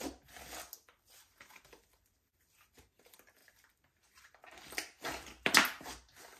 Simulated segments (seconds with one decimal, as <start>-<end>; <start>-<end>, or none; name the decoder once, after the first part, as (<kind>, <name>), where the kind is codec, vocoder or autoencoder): none